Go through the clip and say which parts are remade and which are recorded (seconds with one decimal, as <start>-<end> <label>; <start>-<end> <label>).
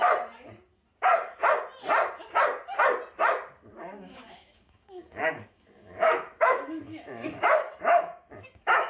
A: 0.0-3.8 recorded; 3.8-8.9 remade